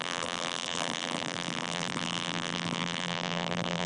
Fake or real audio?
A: fake